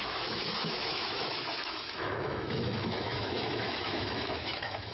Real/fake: fake